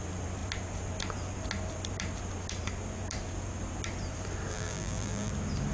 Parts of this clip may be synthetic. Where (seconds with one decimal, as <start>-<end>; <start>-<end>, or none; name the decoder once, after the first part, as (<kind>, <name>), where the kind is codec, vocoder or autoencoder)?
4.5-5.3 (vocoder, BigVGAN v2)